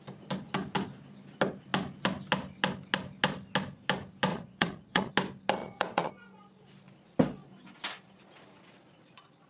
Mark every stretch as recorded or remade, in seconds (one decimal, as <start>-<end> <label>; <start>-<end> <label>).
0.0-4.3 recorded; 4.3-5.1 remade; 5.1-5.6 recorded; 5.6-6.1 remade; 6.1-9.5 recorded